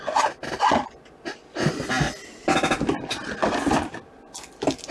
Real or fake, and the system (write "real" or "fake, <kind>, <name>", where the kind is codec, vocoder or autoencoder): real